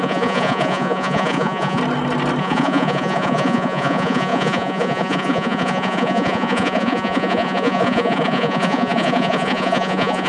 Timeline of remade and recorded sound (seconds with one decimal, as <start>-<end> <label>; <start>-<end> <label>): 0.0-1.8 remade; 1.8-2.4 recorded; 2.4-10.3 remade